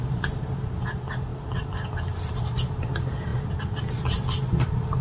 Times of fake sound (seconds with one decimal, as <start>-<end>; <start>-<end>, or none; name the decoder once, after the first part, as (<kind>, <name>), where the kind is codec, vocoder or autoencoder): none